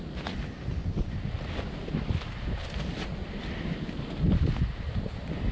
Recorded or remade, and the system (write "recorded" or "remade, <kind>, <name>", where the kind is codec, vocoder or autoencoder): recorded